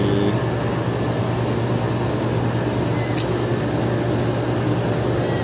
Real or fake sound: real